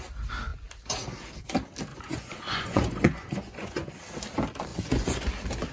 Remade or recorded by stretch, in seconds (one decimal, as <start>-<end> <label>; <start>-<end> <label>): 0.0-1.9 recorded; 1.9-3.9 remade; 3.9-4.7 recorded; 4.7-5.3 remade; 5.3-5.7 recorded